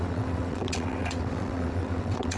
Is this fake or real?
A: fake